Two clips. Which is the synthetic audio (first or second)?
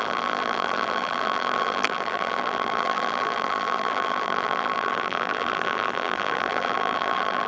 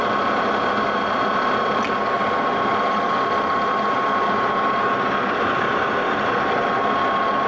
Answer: first